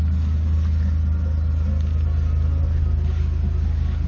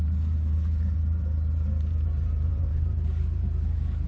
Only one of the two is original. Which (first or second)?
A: first